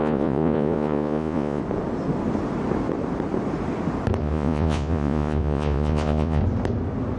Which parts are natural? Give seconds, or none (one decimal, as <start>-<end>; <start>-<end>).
1.6-4.2; 6.4-7.2